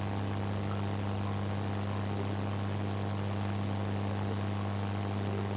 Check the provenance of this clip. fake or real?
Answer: real